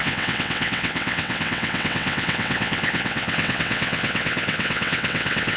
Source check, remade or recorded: remade